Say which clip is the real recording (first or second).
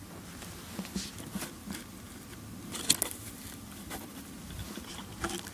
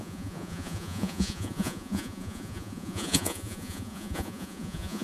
first